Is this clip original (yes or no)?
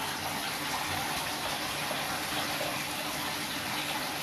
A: yes